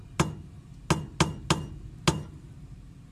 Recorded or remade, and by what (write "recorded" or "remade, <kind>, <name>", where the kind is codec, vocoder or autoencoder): recorded